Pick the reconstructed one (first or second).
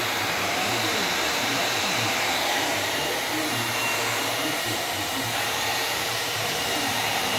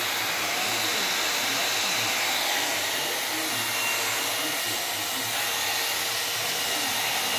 first